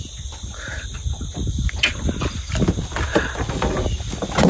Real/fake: real